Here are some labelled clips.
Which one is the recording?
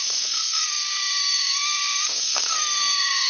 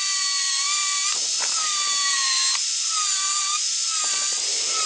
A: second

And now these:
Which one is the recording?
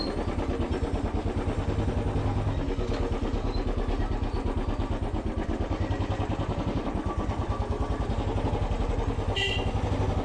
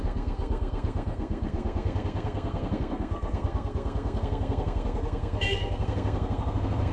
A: first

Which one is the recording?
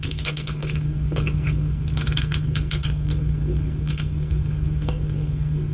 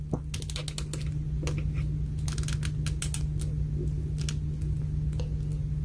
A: second